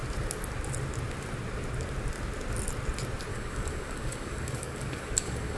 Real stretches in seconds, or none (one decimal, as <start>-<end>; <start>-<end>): 0.0-3.3